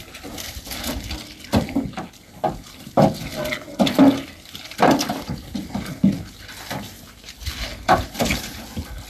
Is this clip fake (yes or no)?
no